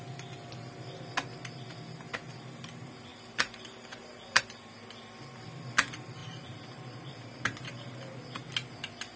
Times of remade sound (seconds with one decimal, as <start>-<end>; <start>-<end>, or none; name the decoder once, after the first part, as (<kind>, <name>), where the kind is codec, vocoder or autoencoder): 3.1-4.4 (vocoder, BigVGAN v2); 6.2-8.0